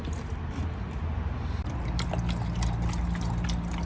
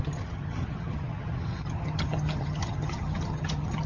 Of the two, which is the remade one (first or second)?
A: second